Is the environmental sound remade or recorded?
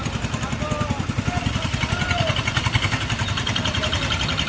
recorded